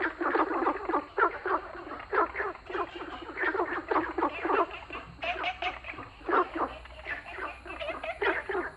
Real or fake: real